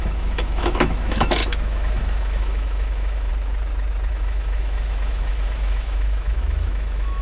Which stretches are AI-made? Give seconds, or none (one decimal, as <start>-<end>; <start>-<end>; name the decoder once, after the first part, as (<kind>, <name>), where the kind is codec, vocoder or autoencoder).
0.0-3.3 (autoencoder, DAC-VAE); 4.1-7.2